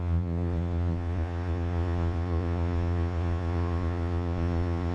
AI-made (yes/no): yes